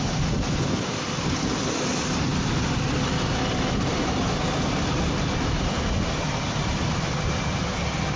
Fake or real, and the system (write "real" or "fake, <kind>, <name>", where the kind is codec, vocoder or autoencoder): real